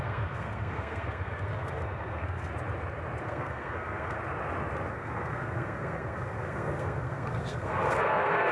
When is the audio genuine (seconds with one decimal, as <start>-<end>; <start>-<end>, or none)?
2.5-3.2; 4.2-4.9